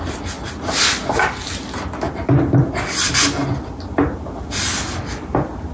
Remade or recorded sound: recorded